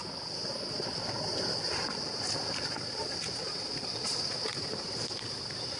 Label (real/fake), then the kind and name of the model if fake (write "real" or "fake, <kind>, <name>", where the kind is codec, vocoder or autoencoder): real